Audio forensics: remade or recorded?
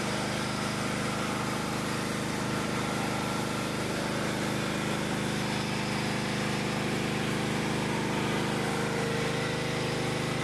recorded